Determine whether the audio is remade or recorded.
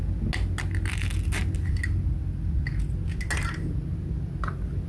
recorded